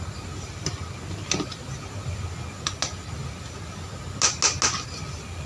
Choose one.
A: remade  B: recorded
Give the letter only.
B